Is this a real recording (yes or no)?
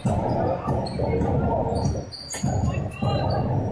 yes